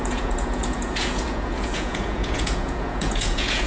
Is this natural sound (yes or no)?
no